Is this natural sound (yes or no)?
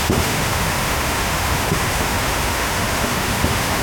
no